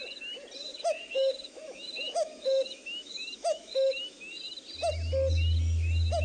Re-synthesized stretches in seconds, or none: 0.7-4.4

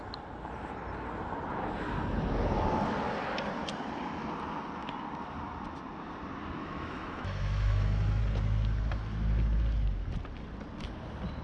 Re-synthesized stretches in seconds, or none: 6.6-8.2

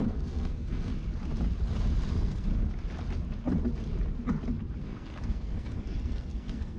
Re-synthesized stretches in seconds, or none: 0.0-0.9; 2.1-2.5; 4.8-6.8